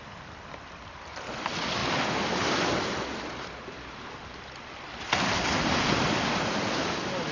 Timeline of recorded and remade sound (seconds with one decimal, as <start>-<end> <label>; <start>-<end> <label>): 0.0-7.3 recorded